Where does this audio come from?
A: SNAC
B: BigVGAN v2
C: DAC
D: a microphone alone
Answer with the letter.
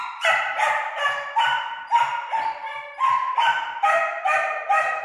D